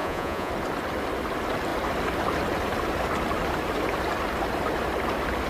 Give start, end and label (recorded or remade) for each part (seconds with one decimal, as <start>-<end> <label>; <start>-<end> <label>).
0.0-0.5 remade; 0.5-5.5 recorded